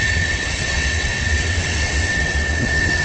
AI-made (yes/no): yes